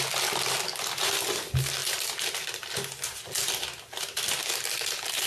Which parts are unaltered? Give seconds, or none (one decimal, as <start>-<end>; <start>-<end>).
0.0-5.3